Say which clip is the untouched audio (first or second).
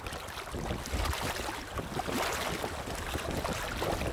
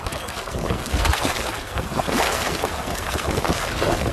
first